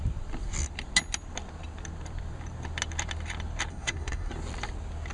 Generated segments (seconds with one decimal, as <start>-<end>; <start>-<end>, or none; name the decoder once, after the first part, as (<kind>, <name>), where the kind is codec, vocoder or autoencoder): 3.7-4.3 (codec, SNAC)